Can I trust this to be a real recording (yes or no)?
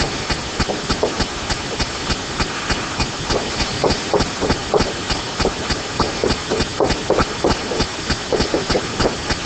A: yes